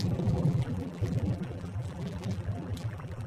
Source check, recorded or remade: remade